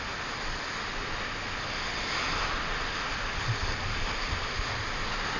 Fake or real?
real